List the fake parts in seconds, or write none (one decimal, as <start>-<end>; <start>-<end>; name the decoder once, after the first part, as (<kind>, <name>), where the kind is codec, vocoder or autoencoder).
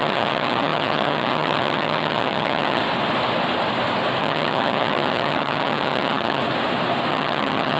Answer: 0.0-2.8 (vocoder, HiFi-GAN); 4.2-6.4; 7.1-7.8